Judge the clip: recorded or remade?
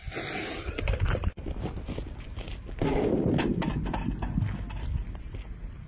recorded